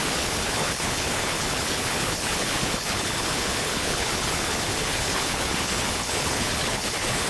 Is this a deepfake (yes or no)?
yes